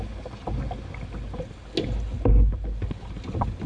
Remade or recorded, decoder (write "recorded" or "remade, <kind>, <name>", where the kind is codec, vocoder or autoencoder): recorded